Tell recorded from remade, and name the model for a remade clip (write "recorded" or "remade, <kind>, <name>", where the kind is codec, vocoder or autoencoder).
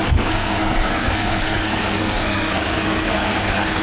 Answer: remade, codec, SNAC